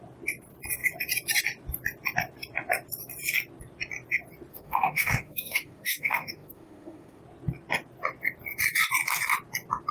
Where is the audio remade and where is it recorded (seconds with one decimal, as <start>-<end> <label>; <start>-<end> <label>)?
0.0-4.5 recorded; 4.5-7.2 remade; 7.2-9.9 recorded